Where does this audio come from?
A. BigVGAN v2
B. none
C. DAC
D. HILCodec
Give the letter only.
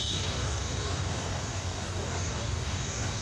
C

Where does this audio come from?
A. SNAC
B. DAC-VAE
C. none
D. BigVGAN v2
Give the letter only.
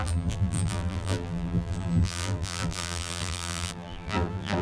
D